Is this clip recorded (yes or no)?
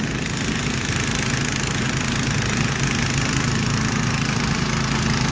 yes